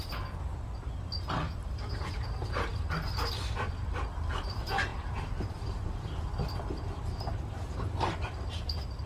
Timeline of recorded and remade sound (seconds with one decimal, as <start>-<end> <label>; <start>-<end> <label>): 0.0-4.9 recorded; 4.9-5.9 remade; 5.9-9.1 recorded